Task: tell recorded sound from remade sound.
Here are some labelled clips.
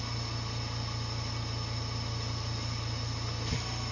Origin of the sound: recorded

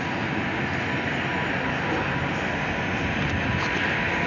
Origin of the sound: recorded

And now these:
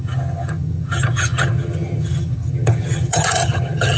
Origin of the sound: remade